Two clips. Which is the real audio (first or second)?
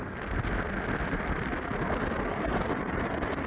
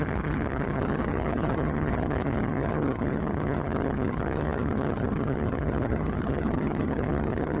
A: first